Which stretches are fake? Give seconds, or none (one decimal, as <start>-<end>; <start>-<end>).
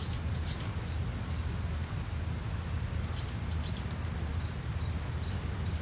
none